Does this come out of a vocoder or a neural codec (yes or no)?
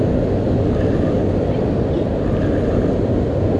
no